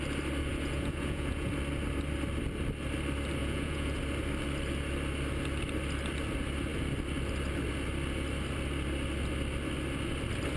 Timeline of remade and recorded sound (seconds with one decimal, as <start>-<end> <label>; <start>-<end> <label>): 0.0-0.5 recorded; 0.5-1.5 remade; 1.5-3.4 recorded; 3.4-4.0 remade; 4.0-10.6 recorded